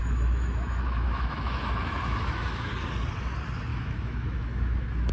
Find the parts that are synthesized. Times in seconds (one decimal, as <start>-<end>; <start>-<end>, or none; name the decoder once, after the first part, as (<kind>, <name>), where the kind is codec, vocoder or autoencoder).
0.0-2.7 (autoencoder, DAC-VAE); 3.7-5.1